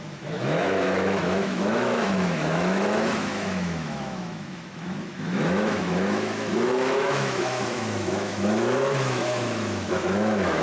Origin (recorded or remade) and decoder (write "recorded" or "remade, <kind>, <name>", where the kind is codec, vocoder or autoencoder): remade, autoencoder, DAC-VAE